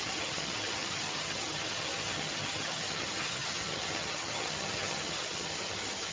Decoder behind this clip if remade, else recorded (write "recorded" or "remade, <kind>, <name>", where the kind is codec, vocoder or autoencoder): remade, vocoder, HiFi-GAN